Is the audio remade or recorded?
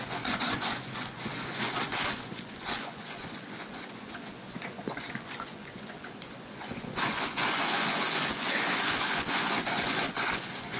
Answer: remade